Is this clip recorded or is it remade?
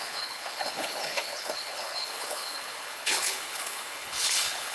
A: remade